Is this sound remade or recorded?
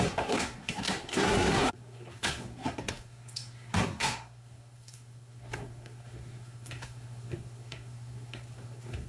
remade